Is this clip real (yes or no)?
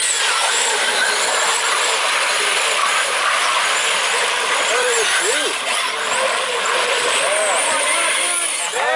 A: yes